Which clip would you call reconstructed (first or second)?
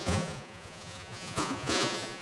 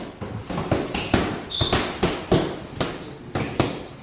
first